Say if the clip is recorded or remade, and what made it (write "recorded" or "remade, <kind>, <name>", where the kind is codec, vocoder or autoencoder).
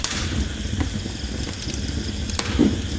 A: remade, vocoder, BigVGAN v2